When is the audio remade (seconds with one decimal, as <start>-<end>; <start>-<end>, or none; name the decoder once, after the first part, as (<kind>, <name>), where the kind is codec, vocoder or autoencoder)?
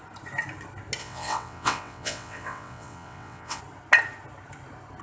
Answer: 1.0-3.6 (vocoder, WaveNeXt)